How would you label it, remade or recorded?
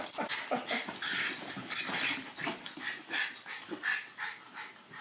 recorded